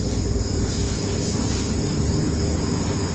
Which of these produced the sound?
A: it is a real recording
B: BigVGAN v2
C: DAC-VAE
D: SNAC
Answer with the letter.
B